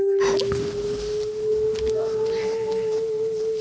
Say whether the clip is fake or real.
real